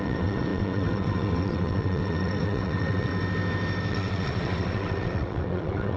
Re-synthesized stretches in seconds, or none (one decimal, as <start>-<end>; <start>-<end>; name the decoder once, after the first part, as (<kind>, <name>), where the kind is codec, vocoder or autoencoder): 0.0-3.1 (vocoder, WaveNeXt); 3.9-6.0

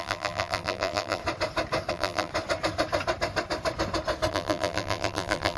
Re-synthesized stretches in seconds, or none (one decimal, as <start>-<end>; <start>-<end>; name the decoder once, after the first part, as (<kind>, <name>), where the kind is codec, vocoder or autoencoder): 0.0-1.2 (vocoder, BigVGAN v2); 1.9-2.3; 4.3-5.6

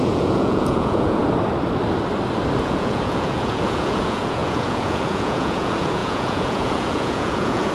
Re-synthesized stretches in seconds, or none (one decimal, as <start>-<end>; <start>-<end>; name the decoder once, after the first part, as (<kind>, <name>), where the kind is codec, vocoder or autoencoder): 0.0-1.2 (vocoder, Vocos); 2.6-7.7

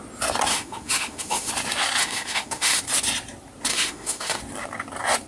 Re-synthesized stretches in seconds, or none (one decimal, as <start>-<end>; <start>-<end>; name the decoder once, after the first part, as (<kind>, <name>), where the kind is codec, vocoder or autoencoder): 0.5-1.5 (autoencoder, DAC-VAE); 2.0-2.8; 3.7-4.4